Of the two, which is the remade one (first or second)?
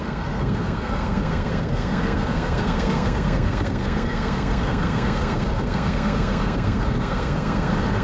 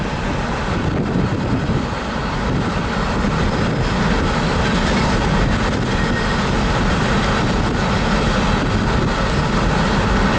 first